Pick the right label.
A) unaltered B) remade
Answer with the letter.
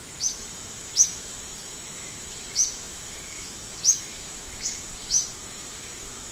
B